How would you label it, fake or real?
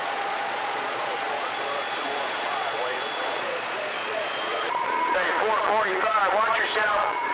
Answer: fake